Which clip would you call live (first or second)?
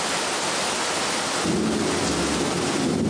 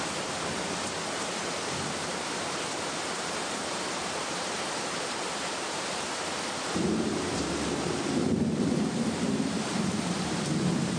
first